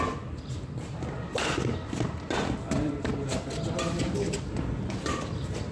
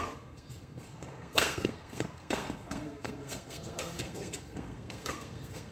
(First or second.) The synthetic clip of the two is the second